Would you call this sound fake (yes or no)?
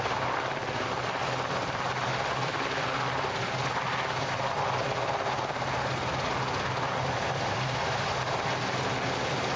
no